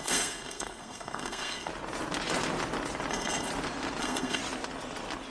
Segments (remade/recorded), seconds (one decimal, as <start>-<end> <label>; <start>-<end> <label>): 0.0-1.7 remade; 1.7-3.1 recorded; 3.1-3.5 remade; 3.5-4.0 recorded; 4.0-4.4 remade; 4.4-5.3 recorded